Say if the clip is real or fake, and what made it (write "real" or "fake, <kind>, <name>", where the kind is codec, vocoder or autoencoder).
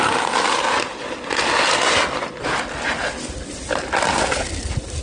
real